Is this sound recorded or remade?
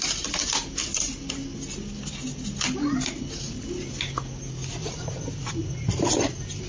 recorded